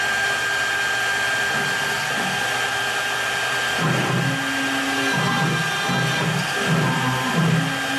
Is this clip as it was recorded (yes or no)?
yes